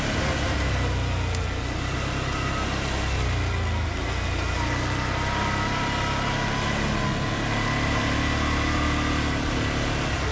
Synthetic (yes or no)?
no